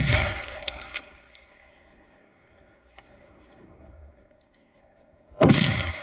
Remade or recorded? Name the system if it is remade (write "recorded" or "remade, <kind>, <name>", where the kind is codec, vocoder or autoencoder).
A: remade, codec, SNAC